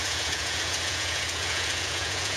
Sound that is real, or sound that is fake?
fake